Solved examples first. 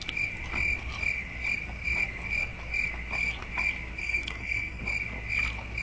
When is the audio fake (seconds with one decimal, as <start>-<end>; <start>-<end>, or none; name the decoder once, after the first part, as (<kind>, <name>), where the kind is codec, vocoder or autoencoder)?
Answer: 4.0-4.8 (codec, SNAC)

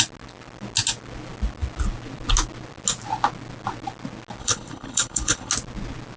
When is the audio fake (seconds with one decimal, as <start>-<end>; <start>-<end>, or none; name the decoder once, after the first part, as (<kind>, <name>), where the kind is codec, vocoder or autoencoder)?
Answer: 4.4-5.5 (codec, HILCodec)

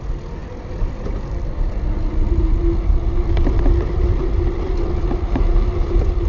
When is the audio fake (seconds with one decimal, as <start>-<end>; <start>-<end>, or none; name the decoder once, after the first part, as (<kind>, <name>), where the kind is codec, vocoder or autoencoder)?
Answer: none

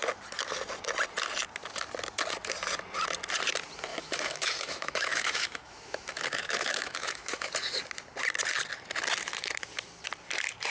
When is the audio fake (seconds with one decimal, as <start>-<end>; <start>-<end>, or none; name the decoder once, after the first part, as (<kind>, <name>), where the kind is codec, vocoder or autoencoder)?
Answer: 3.9-7.5 (autoencoder, DAC-VAE)

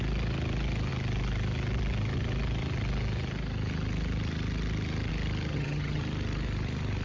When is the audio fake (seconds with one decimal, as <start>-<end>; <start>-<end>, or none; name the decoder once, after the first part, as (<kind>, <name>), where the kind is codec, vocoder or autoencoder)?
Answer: 5.5-6.0 (vocoder, HiFi-GAN)

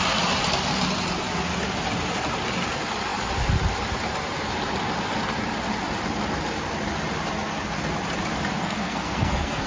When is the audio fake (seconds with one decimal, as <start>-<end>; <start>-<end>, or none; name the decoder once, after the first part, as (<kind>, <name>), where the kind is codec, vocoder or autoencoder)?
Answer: 8.6-9.7 (codec, SNAC)